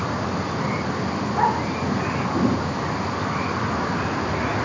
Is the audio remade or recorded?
recorded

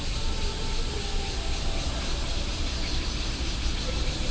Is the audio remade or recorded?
recorded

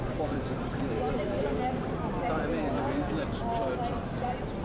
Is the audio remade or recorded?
recorded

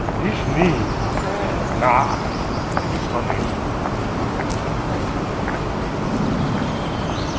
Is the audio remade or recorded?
recorded